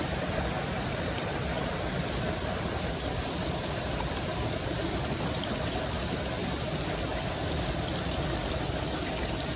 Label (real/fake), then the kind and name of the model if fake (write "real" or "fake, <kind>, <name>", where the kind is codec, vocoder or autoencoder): fake, vocoder, BigVGAN v2